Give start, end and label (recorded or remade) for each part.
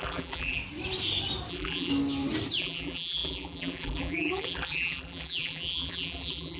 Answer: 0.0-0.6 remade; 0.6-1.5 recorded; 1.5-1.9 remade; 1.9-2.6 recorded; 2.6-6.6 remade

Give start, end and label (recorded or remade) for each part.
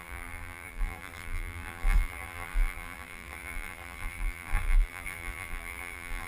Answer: 0.0-6.3 remade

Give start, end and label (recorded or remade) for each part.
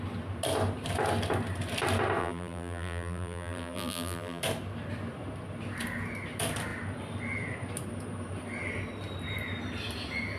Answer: 0.0-2.2 recorded; 2.2-4.4 remade; 4.4-10.4 recorded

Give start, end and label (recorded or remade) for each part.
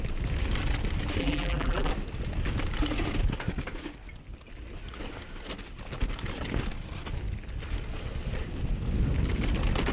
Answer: 0.0-1.2 recorded; 1.2-1.9 remade; 1.9-9.9 recorded